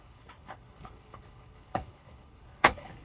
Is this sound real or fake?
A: fake